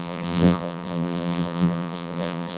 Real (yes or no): no